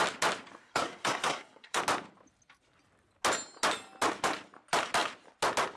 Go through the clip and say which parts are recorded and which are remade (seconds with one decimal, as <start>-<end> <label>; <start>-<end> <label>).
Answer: 0.0-0.6 recorded; 0.6-1.8 remade; 1.8-5.8 recorded